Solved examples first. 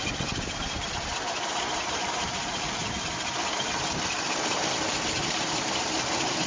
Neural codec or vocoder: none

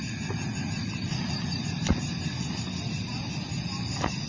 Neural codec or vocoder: none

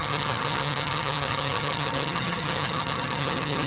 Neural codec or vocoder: vocoder, HiFi-GAN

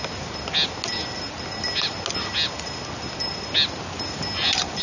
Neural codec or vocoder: none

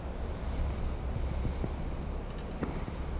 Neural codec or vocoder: none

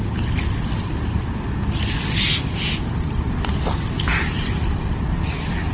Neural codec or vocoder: none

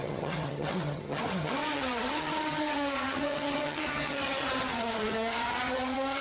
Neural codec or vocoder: vocoder, HiFi-GAN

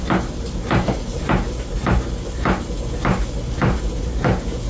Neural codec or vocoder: none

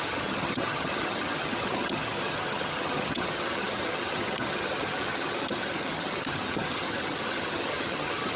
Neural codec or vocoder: vocoder, HiFi-GAN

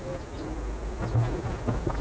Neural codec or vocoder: none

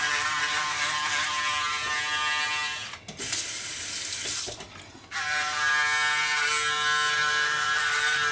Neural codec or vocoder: none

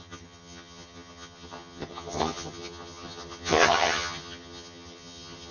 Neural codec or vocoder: vocoder, HiFi-GAN